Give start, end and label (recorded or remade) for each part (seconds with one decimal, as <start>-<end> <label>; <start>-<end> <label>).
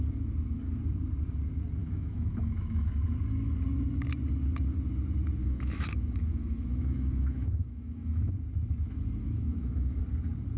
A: 0.0-1.8 recorded; 1.8-3.0 remade; 3.0-5.4 recorded; 5.4-8.3 remade; 8.3-9.2 recorded; 9.2-10.0 remade; 10.0-10.6 recorded